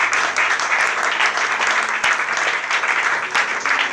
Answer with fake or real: real